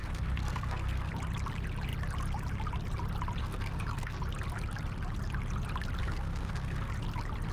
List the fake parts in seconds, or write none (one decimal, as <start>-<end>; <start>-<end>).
0.0-1.1; 3.4-4.2; 6.0-6.9